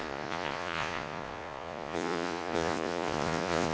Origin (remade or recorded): remade